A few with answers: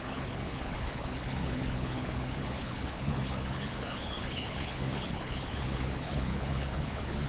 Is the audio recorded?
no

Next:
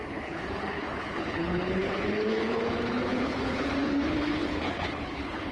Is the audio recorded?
no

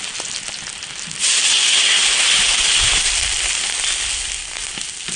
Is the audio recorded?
yes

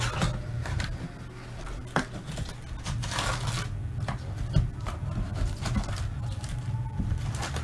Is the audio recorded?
yes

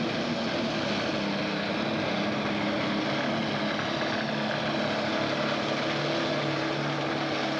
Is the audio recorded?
yes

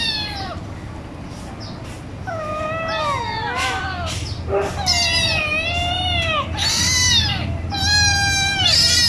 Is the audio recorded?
yes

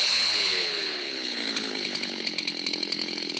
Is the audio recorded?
no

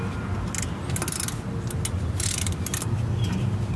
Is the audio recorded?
yes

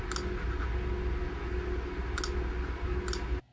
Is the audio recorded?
yes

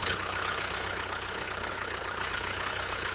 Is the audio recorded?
no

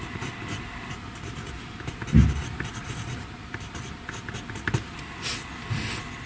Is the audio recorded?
yes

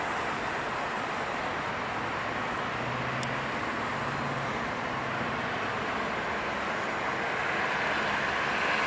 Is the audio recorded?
yes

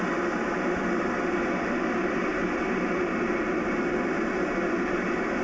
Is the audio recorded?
yes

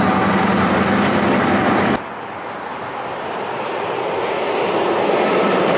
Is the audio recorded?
yes